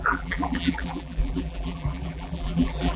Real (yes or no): no